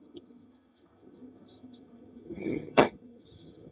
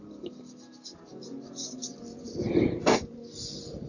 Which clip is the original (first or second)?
second